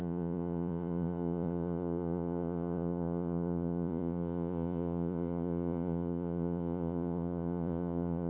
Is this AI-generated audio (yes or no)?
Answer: yes